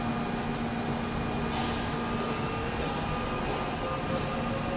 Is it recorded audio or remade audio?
recorded